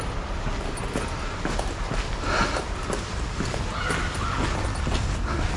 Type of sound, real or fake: real